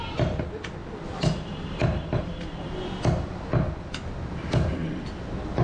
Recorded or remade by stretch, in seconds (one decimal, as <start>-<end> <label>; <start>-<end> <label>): 0.0-5.6 recorded